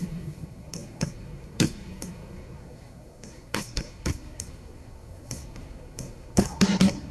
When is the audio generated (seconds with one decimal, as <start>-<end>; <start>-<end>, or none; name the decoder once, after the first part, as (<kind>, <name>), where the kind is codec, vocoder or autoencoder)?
0.0-7.1 (codec, SNAC)